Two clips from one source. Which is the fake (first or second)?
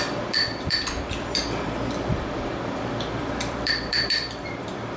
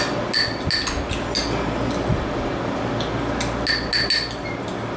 first